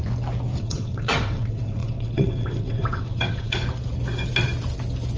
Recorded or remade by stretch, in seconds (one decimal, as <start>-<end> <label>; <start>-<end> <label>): 0.0-0.6 recorded; 0.6-3.6 remade; 3.6-5.2 recorded